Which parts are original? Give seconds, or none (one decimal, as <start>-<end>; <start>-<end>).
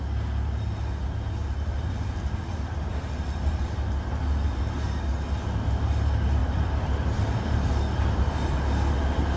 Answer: 0.0-1.4; 4.6-6.4; 8.6-9.4